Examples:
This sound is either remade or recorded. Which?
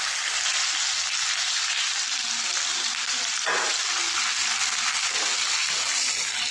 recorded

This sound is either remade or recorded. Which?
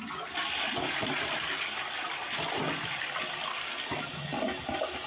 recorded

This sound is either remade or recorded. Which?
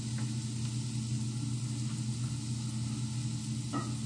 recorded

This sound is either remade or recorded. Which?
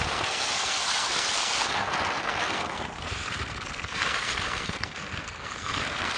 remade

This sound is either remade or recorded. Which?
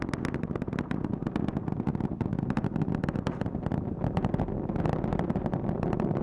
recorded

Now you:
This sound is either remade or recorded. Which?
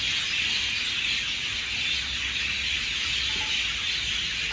recorded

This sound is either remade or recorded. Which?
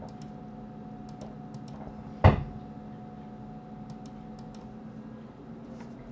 recorded